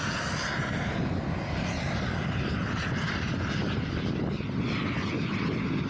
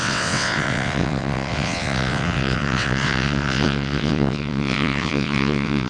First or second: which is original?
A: first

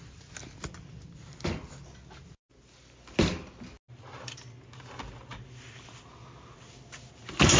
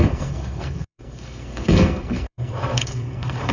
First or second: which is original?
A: first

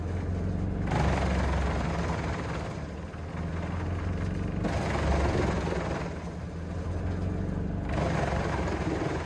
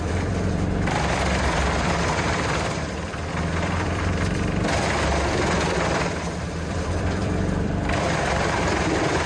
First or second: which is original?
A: first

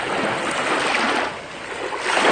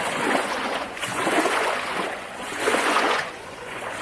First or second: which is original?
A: first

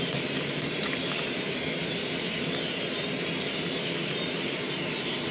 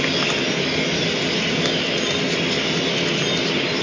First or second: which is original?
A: second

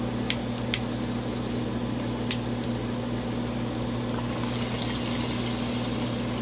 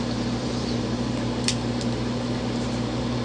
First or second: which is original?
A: first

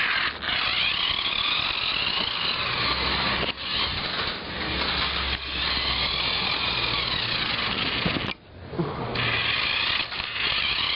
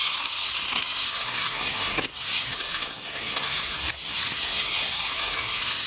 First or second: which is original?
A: first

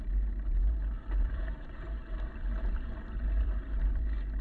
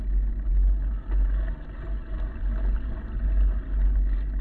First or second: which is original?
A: second